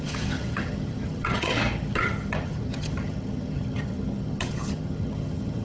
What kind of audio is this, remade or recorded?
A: remade